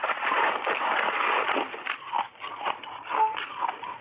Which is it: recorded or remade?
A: recorded